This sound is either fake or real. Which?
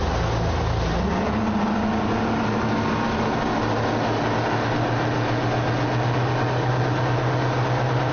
real